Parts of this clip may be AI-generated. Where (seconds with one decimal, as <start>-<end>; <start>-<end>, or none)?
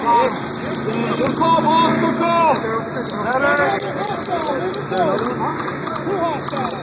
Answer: 3.6-4.6; 5.5-6.1